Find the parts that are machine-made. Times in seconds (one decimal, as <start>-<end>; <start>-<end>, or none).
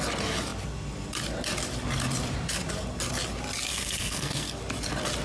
3.7-4.6